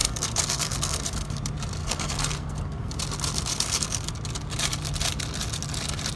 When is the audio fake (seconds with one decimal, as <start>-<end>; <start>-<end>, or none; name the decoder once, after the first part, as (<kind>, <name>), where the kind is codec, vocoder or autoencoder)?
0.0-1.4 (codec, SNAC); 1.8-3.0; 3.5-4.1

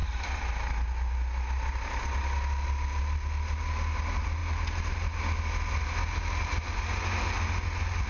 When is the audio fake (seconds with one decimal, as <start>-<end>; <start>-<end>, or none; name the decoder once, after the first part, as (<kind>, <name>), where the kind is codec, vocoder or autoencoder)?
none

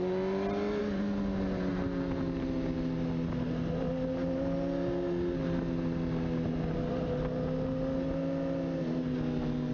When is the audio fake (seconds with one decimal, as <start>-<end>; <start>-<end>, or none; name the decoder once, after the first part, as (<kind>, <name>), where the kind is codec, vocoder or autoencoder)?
none

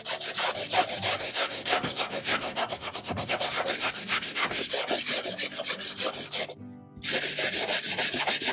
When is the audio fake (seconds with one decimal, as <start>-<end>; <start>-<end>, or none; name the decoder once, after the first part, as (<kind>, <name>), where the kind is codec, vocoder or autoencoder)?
1.2-4.7 (codec, SNAC)

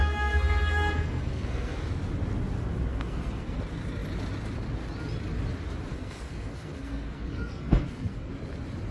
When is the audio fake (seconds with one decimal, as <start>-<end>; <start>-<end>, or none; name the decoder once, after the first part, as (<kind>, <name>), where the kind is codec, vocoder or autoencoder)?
0.0-1.9 (codec, SNAC); 2.9-3.6; 5.9-8.3

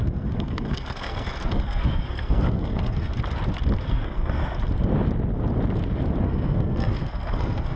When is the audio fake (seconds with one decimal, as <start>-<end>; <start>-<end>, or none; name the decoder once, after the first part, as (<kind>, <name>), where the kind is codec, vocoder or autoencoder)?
0.0-3.1 (codec, SNAC); 3.8-4.4; 6.2-7.8